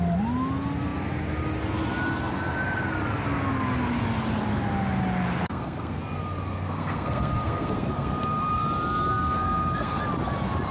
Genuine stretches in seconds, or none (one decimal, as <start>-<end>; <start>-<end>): 0.0-5.4; 6.0-6.5; 8.4-9.1; 10.0-10.7